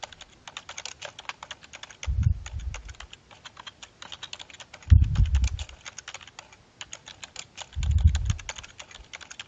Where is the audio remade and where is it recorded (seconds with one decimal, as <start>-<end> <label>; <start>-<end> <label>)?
0.0-9.5 recorded